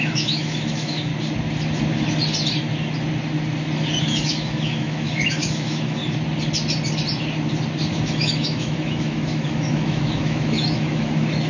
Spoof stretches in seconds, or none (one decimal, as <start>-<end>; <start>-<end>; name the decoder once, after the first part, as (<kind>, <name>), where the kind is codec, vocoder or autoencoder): 0.0-1.1 (autoencoder, DAC-VAE); 4.0-6.0; 7.9-11.5